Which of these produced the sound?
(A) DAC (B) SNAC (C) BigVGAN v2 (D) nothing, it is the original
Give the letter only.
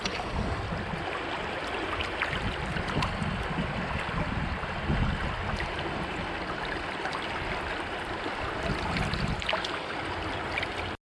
D